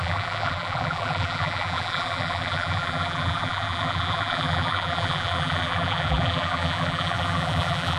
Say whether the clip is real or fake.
fake